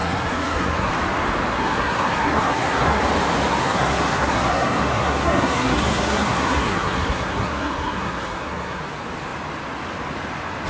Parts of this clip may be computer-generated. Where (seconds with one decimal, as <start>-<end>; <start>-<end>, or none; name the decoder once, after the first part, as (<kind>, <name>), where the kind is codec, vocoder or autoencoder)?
0.0-0.9 (codec, SNAC); 1.5-3.0; 3.6-8.8

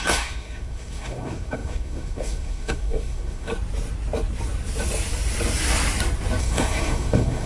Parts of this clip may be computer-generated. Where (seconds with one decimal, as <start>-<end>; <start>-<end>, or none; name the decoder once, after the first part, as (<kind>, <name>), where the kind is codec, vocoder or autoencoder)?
0.0-3.5 (codec, SNAC); 6.4-7.5

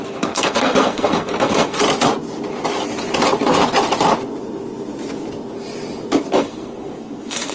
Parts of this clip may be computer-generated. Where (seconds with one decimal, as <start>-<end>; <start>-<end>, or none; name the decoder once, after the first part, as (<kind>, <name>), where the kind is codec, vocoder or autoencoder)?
0.0-1.8 (codec, SNAC); 6.3-7.5

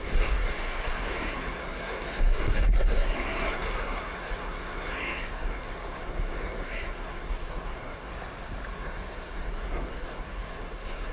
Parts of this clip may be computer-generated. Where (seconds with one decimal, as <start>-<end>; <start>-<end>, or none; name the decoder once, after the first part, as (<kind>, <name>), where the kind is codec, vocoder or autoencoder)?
0.0-8.1 (codec, SNAC); 8.7-11.1

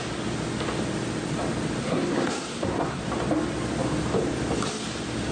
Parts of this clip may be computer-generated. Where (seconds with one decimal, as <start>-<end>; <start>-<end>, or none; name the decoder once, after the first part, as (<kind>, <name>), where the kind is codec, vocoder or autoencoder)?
1.8-3.0 (codec, SNAC)

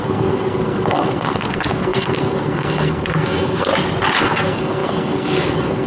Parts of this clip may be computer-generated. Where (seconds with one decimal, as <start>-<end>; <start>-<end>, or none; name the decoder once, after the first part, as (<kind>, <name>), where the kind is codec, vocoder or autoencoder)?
0.0-3.7 (codec, SNAC); 4.2-5.9